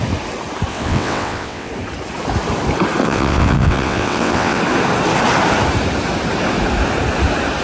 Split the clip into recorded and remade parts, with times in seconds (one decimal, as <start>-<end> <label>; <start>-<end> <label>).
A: 0.0-0.7 recorded; 0.7-1.7 remade; 1.7-3.0 recorded; 3.0-4.6 remade; 4.6-7.6 recorded